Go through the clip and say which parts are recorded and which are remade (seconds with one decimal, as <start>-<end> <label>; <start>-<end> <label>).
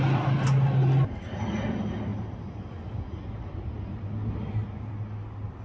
0.0-5.6 recorded